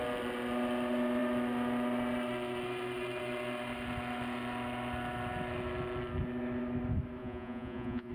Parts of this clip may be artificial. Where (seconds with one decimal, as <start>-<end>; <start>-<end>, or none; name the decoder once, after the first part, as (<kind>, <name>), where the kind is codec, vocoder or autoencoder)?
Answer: 7.2-8.1 (vocoder, Vocos)